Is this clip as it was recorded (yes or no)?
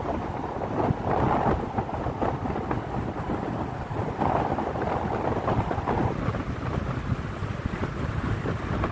yes